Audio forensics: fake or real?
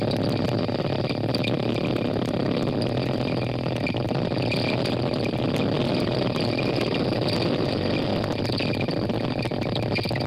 real